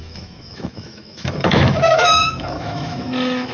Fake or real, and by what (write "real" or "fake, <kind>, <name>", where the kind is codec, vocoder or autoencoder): fake, autoencoder, DAC-VAE